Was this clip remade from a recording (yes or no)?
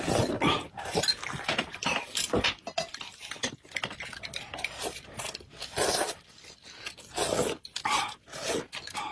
no